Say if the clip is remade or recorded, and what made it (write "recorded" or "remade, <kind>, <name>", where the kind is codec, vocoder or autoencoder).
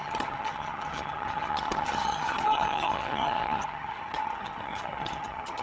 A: remade, vocoder, HiFi-GAN